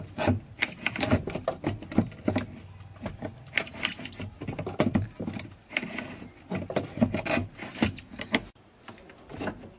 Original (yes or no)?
yes